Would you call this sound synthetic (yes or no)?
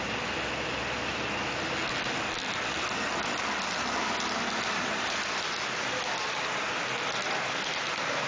no